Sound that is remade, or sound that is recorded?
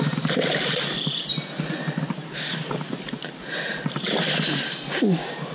recorded